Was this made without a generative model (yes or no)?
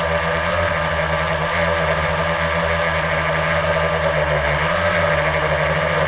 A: yes